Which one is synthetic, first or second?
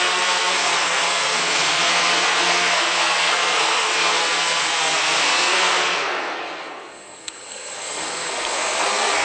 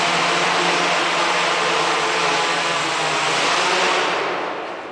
first